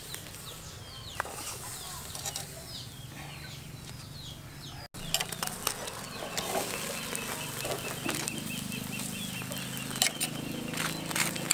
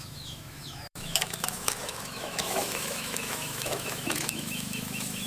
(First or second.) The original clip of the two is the first